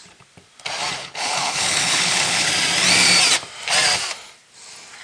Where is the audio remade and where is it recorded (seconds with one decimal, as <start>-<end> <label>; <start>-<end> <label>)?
0.0-1.0 recorded; 1.0-2.5 remade; 2.5-5.0 recorded